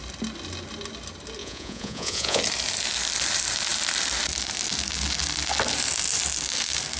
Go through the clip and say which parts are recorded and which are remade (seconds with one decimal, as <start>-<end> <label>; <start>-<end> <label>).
0.0-1.4 recorded; 1.4-2.4 remade; 2.4-7.0 recorded